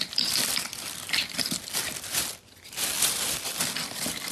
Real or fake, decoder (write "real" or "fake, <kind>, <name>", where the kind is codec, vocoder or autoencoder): fake, vocoder, BigVGAN v2